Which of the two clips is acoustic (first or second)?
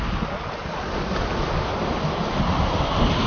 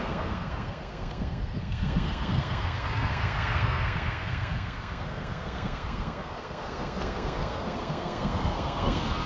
first